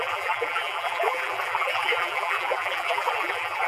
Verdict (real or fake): fake